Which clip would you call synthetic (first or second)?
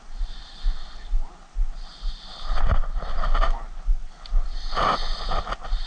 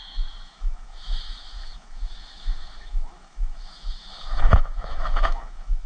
second